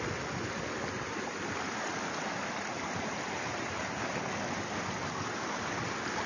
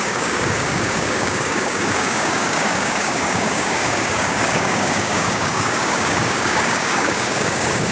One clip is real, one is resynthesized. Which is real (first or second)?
first